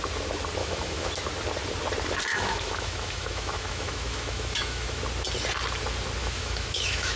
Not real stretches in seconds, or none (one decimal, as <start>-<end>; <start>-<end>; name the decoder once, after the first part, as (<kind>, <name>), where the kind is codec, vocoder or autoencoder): 0.6-1.1 (autoencoder, DAC-VAE); 2.3-5.0; 6.2-7.2